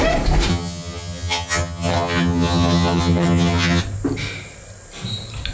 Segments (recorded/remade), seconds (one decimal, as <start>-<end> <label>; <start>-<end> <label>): 0.0-0.5 recorded; 0.5-3.8 remade; 3.8-5.5 recorded